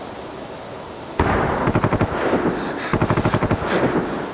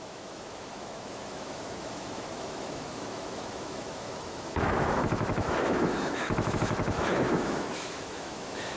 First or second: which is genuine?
first